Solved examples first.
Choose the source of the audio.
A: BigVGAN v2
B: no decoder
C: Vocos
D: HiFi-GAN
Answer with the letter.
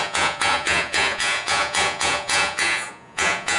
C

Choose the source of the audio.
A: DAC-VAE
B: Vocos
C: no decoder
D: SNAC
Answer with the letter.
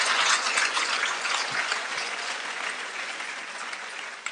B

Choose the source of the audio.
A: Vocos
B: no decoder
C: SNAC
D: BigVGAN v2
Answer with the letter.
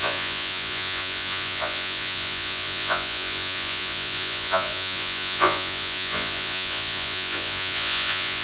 A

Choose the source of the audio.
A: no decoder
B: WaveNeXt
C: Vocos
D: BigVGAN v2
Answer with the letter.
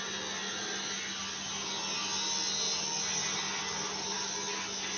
A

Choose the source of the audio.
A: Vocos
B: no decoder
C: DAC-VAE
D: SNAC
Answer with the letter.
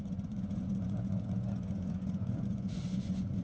A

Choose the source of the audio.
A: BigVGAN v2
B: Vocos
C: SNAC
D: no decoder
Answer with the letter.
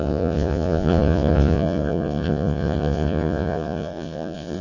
B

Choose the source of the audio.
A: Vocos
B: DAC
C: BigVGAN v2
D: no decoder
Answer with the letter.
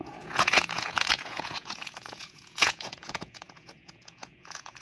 A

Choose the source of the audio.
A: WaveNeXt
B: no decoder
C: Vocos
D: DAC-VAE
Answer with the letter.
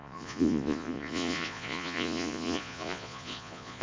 C